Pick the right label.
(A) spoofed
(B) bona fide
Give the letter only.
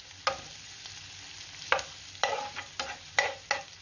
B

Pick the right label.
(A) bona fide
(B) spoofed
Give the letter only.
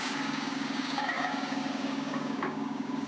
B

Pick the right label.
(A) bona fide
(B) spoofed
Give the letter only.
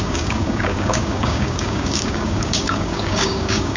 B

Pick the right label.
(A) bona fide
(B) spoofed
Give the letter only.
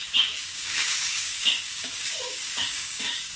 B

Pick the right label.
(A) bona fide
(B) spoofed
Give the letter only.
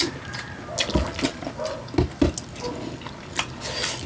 A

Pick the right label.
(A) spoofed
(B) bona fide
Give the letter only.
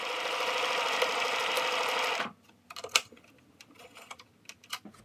B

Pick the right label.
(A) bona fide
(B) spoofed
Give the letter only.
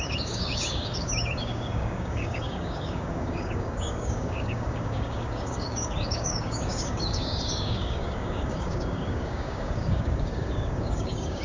B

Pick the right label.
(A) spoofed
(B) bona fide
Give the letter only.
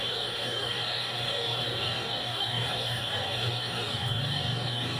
A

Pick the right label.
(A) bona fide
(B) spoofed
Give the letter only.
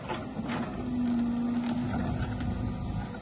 A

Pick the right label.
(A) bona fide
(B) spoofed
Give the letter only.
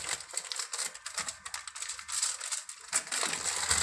A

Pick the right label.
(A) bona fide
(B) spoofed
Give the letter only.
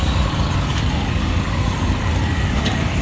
B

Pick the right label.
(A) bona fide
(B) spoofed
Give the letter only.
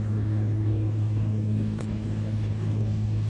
B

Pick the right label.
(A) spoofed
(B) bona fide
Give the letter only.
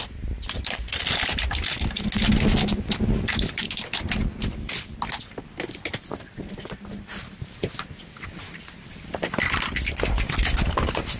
B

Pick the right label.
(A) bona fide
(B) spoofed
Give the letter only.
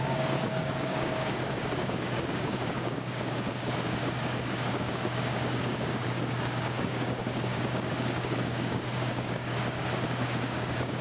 B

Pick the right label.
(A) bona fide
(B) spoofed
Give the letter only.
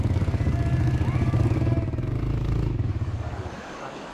B